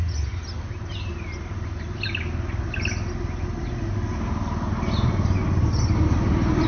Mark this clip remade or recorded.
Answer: recorded